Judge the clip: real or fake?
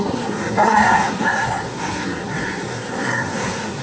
fake